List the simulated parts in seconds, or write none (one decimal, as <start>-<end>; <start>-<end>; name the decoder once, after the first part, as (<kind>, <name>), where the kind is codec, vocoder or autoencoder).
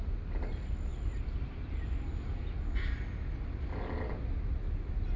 none